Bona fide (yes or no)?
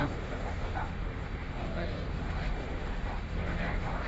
no